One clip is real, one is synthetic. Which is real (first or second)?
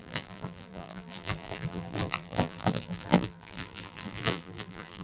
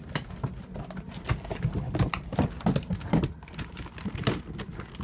second